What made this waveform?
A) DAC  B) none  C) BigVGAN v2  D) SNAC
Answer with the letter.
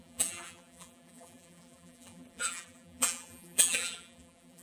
C